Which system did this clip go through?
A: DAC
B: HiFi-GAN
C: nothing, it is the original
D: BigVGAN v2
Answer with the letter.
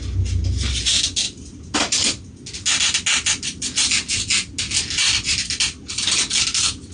C